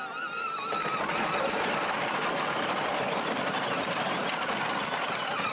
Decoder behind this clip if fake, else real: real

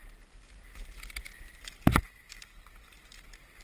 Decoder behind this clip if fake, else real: real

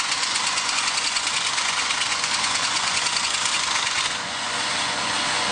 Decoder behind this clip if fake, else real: fake, vocoder, Vocos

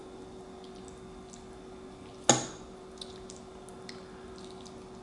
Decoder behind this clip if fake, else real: real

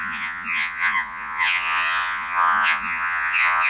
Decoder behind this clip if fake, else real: fake, vocoder, Vocos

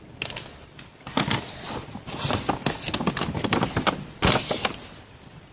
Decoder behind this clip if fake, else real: real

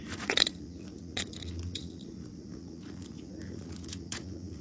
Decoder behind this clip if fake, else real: fake, vocoder, Vocos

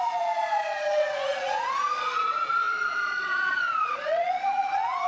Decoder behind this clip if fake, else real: fake, vocoder, Vocos